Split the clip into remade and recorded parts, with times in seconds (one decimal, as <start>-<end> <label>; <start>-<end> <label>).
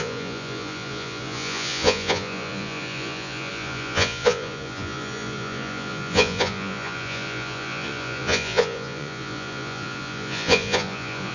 0.0-11.3 remade